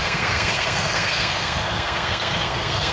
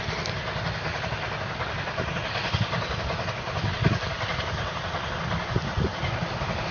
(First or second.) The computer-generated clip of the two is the first